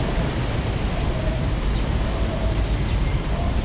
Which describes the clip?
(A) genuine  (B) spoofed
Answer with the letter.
B